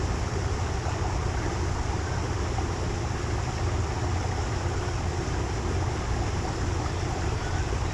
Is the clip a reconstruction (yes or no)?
no